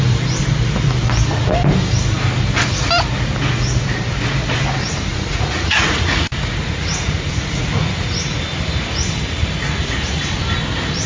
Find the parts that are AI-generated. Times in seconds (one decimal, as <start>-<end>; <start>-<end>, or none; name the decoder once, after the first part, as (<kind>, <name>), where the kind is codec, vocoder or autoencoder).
5.1-8.4 (vocoder, Vocos)